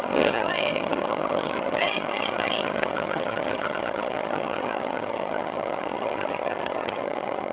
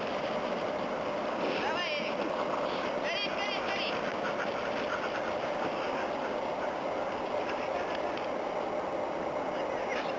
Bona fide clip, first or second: second